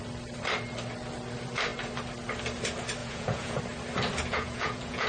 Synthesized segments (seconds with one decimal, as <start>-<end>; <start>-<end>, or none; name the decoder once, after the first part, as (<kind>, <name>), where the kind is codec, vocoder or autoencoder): 3.0-3.6 (vocoder, Vocos); 4.3-5.1